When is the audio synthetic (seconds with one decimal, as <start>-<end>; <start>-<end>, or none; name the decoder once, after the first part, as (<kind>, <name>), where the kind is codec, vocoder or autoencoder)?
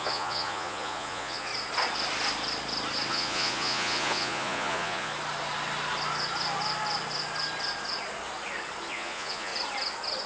0.0-1.5 (vocoder, Vocos); 3.1-5.1; 8.9-9.5